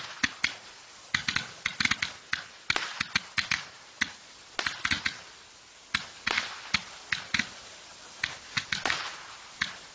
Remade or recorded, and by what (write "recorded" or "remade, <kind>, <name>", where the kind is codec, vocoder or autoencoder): recorded